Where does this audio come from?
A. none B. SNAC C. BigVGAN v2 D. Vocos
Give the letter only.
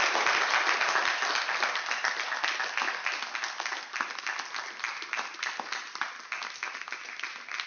A